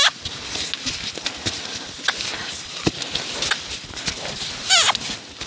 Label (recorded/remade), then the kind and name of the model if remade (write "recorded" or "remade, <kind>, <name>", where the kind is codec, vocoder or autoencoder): recorded